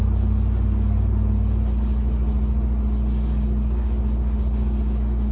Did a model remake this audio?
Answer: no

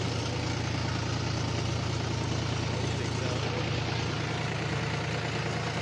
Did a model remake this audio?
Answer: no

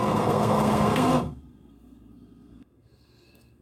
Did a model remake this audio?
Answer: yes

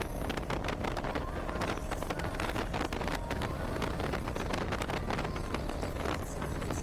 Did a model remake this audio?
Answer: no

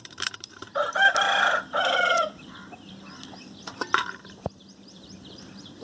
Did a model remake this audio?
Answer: yes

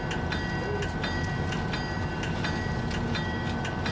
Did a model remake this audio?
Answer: no